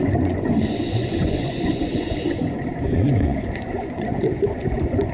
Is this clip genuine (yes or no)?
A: no